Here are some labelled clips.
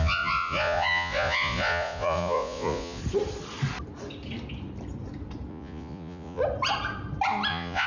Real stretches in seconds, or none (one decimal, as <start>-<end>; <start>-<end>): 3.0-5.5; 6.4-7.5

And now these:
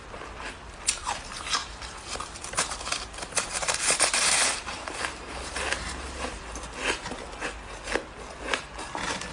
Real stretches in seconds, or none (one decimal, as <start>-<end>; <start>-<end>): 0.0-1.6; 6.4-9.3

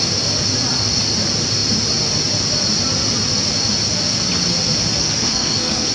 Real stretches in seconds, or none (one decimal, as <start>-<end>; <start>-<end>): 0.0-5.0

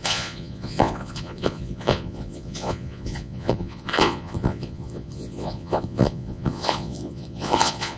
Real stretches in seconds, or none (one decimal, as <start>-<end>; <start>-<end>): none

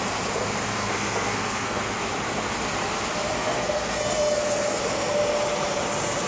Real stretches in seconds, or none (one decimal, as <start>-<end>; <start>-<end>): 0.0-0.8; 1.8-3.4; 4.8-6.3

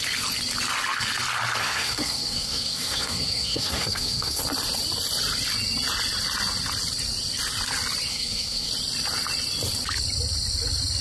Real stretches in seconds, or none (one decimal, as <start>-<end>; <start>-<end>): 0.0-1.6; 4.4-8.1; 8.7-11.0

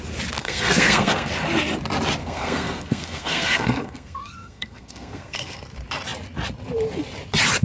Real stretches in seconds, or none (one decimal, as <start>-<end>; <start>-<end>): 0.0-0.4; 1.3-2.2; 5.6-7.6

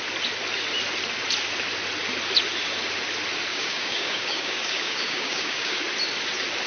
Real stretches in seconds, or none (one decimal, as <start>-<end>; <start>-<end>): 0.0-3.5; 5.8-6.7